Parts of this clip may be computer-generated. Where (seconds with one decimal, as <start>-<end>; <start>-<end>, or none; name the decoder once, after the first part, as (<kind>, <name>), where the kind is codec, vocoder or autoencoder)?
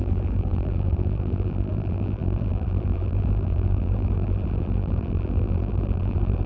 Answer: 0.0-6.5 (vocoder, BigVGAN v2)